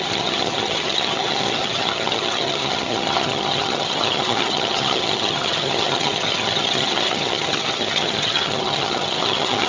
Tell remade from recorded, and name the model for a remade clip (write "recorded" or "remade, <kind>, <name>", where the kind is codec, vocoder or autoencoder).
remade, vocoder, HiFi-GAN